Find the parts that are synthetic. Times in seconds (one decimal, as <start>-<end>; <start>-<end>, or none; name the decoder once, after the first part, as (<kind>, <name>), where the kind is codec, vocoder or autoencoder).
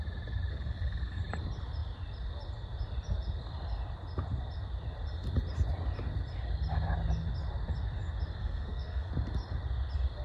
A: 0.5-1.2 (codec, SNAC); 8.4-9.1